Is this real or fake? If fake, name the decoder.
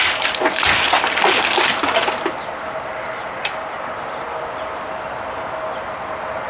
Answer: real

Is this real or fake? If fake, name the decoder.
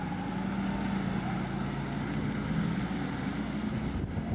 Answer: real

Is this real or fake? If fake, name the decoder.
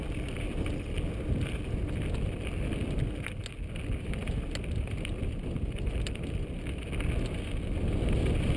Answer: real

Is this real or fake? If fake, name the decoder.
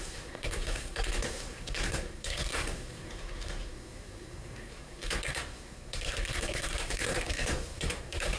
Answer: fake, codec, SNAC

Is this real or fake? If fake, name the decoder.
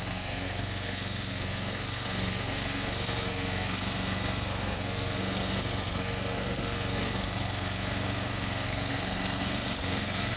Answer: fake, codec, SNAC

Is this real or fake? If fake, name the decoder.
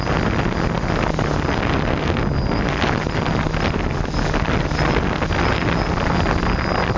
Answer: real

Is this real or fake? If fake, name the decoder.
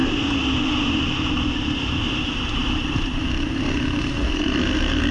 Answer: real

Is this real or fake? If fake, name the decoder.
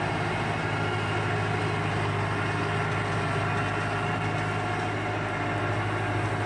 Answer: real